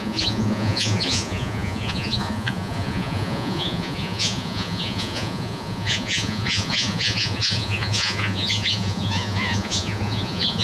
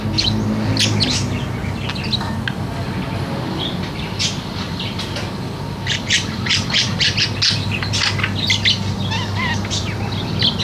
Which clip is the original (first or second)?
second